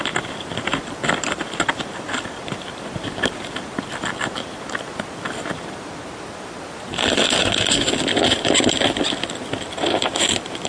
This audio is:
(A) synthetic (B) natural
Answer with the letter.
A